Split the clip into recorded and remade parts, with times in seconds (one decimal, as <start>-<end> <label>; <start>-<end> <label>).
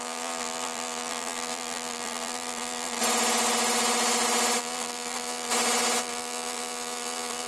0.0-3.0 remade; 3.0-4.6 recorded; 4.6-5.5 remade; 5.5-6.0 recorded; 6.0-7.5 remade